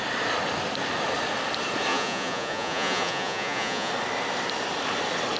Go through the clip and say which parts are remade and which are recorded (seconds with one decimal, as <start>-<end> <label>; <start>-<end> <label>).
0.0-1.9 recorded; 1.9-3.9 remade; 3.9-5.4 recorded